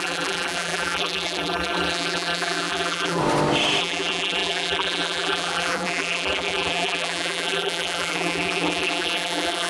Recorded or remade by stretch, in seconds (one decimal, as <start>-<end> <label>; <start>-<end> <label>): 0.0-3.2 remade; 3.2-3.8 recorded; 3.8-9.7 remade